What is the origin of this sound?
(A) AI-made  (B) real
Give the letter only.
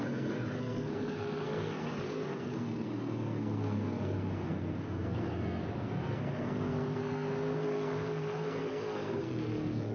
A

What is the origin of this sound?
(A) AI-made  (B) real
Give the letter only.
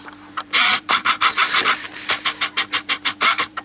A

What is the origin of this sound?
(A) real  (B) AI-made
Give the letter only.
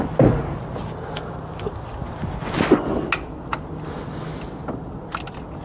A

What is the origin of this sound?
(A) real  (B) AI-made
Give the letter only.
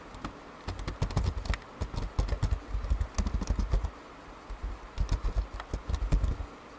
A